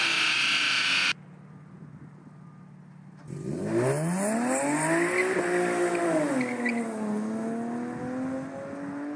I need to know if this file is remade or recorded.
recorded